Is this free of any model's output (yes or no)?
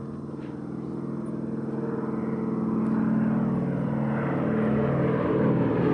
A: yes